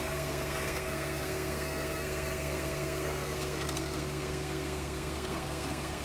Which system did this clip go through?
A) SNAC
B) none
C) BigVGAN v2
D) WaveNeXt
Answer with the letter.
A